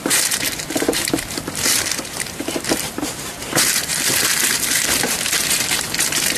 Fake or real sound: fake